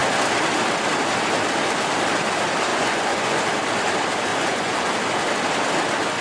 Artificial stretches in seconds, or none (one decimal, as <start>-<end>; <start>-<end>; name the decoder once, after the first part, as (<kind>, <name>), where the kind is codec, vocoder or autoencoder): 2.7-3.4 (vocoder, Vocos); 4.3-4.9